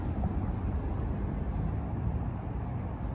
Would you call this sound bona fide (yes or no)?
no